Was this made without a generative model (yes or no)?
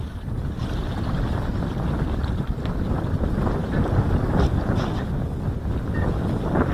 yes